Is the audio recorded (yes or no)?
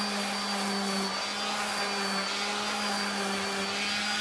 yes